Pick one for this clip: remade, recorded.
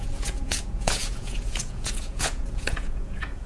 remade